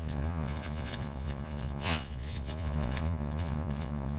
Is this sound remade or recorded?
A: remade